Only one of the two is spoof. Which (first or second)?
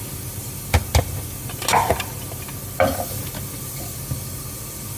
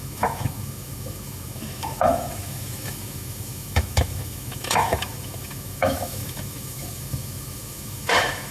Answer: second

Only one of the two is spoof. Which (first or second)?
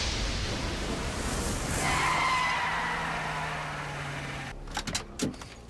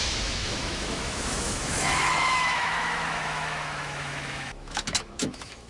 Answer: second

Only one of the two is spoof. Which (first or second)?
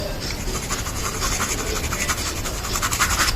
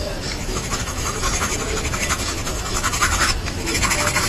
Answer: second